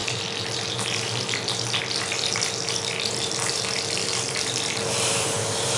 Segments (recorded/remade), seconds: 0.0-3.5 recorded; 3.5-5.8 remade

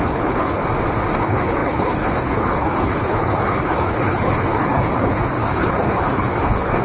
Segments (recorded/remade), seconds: 0.0-0.6 remade; 0.6-1.2 recorded; 1.2-6.8 remade

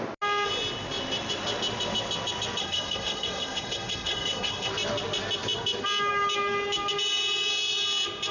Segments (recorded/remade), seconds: 0.0-2.6 recorded; 2.6-4.7 remade; 4.7-8.3 recorded

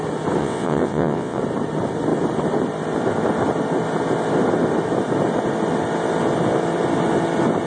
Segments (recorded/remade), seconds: 0.0-0.4 recorded; 0.4-1.4 remade; 1.4-7.7 recorded

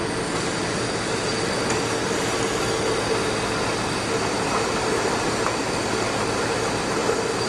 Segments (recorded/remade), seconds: 0.0-7.0 recorded; 7.0-7.5 remade